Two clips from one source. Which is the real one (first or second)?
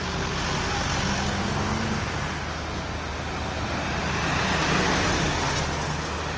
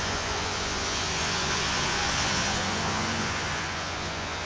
first